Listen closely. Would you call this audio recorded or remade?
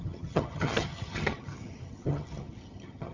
remade